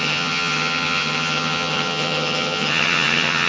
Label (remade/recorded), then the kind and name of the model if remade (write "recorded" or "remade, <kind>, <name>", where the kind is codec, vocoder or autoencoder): remade, vocoder, HiFi-GAN